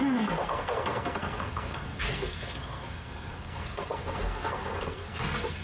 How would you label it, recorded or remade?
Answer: remade